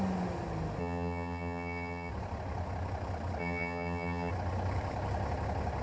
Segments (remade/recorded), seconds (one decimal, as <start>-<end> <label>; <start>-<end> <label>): 0.0-0.8 recorded; 0.8-2.1 remade; 2.1-3.4 recorded; 3.4-4.3 remade; 4.3-5.8 recorded